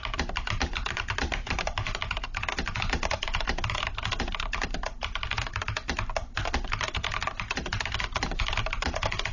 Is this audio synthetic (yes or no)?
yes